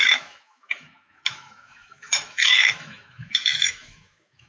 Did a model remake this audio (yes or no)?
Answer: yes